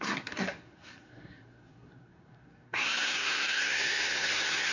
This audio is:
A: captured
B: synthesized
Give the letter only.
B